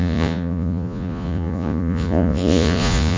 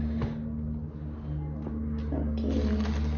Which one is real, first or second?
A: second